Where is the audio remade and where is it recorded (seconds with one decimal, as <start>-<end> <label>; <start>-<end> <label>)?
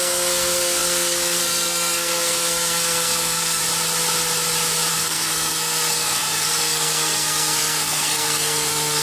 0.0-3.6 remade; 3.6-4.9 recorded; 4.9-9.0 remade